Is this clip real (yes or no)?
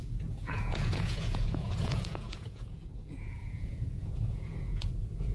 no